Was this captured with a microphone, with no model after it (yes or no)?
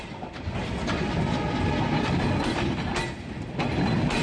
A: yes